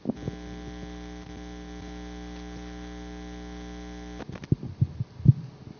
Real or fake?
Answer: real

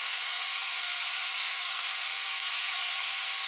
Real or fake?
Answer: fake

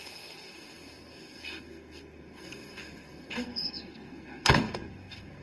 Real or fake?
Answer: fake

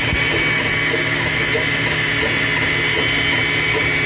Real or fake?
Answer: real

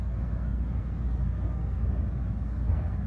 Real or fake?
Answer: fake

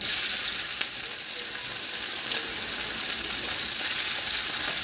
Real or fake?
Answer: real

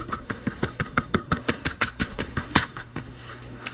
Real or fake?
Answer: fake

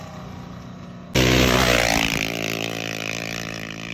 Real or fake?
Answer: real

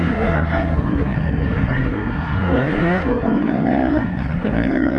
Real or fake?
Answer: fake